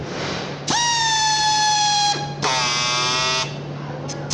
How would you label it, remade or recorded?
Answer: recorded